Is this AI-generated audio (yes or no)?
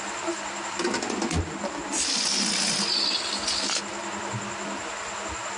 no